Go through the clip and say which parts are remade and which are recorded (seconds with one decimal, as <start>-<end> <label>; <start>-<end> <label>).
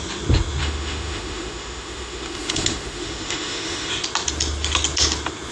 0.0-0.6 recorded; 0.6-3.9 remade; 3.9-5.5 recorded